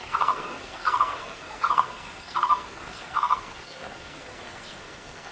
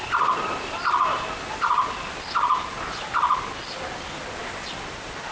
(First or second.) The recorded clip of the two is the second